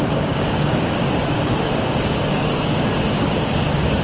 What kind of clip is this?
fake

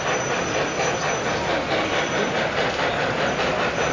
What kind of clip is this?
real